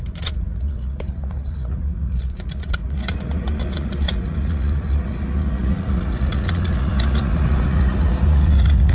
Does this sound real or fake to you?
fake